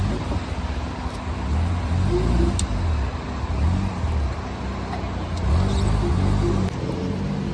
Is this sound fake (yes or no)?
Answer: no